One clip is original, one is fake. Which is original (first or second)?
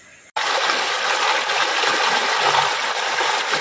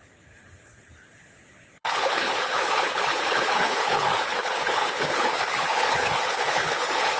first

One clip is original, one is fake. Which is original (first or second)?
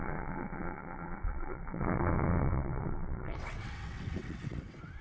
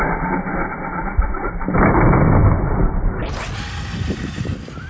second